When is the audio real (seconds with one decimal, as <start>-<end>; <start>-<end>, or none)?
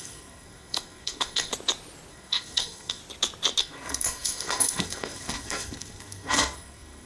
1.5-2.1; 3.0-3.6